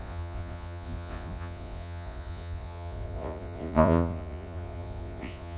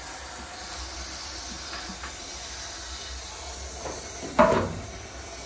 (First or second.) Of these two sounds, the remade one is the first